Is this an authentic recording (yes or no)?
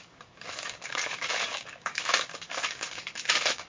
no